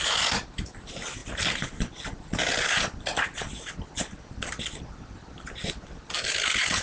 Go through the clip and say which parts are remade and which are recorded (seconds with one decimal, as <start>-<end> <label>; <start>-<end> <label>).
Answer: 0.0-6.8 recorded